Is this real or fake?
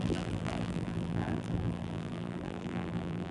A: fake